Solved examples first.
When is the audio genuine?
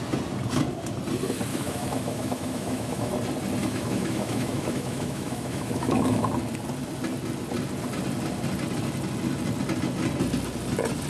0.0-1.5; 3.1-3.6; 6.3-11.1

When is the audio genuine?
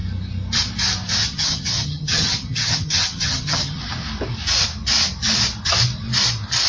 0.0-1.2; 3.8-6.7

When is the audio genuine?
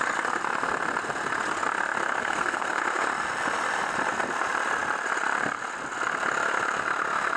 0.0-2.2; 2.8-7.4